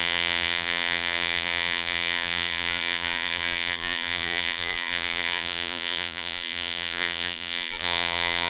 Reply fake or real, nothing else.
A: fake